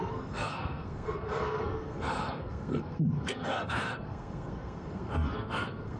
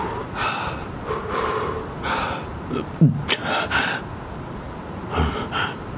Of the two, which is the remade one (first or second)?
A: first